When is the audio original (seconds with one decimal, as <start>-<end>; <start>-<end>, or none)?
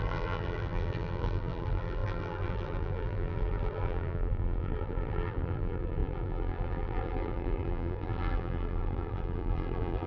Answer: none